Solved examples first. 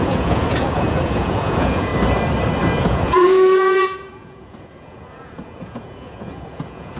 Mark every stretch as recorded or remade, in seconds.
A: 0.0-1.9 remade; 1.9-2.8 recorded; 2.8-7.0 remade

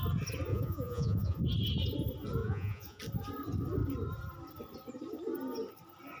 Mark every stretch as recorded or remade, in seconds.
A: 0.0-0.5 recorded; 0.5-1.4 remade; 1.4-2.4 recorded; 2.4-3.0 remade; 3.0-6.2 recorded